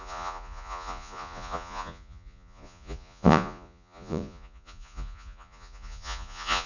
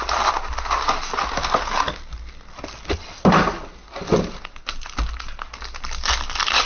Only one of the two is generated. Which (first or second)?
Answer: first